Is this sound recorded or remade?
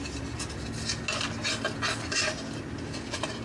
recorded